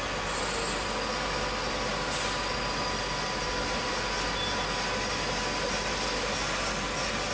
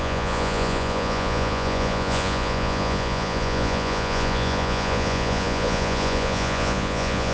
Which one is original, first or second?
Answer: first